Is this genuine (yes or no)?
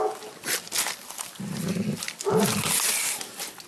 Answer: yes